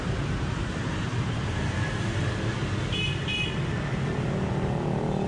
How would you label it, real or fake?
real